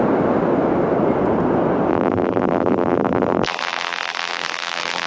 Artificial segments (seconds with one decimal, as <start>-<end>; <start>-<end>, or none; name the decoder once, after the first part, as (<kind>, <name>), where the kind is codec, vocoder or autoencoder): 1.9-5.1 (vocoder, BigVGAN v2)